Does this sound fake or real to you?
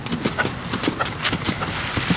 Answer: real